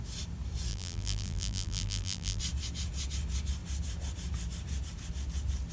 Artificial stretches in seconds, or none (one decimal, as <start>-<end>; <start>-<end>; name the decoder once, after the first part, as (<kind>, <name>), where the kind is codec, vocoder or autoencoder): 0.7-2.4 (vocoder, BigVGAN v2)